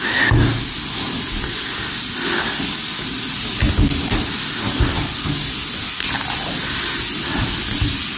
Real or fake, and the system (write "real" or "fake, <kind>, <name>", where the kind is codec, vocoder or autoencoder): real